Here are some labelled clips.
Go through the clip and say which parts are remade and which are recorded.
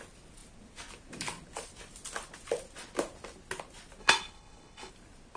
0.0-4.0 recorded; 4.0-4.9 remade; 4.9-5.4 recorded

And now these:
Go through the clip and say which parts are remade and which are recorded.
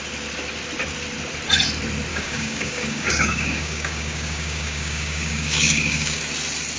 0.0-2.1 recorded; 2.1-6.2 remade; 6.2-6.8 recorded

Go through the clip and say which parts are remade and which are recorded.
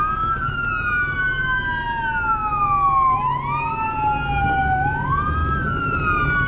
0.0-6.5 recorded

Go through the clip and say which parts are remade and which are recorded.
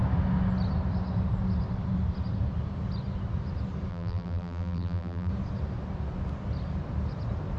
0.0-3.9 recorded; 3.9-5.3 remade; 5.3-7.6 recorded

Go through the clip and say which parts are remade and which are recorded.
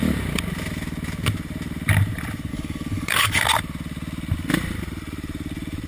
0.0-2.5 recorded; 2.5-3.4 remade; 3.4-5.9 recorded